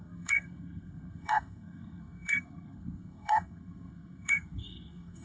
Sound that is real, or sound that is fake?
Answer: fake